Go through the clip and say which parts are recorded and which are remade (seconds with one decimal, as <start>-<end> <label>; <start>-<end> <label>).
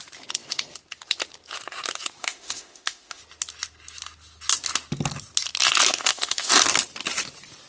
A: 0.0-2.2 recorded; 2.2-3.2 remade; 3.2-5.9 recorded; 5.9-6.5 remade; 6.5-7.7 recorded